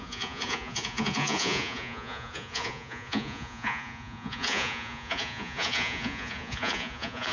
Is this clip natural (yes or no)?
no